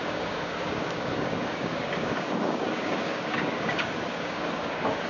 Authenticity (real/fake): fake